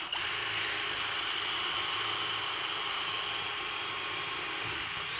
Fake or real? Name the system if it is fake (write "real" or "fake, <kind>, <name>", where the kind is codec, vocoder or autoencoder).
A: real